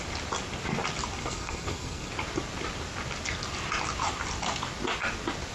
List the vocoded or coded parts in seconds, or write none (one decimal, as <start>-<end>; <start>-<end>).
1.2-2.1